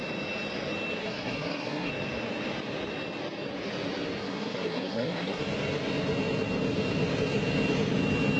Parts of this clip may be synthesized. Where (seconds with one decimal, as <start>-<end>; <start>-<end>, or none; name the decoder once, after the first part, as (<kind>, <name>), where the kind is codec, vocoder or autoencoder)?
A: 1.0-1.9 (codec, SNAC); 4.2-5.4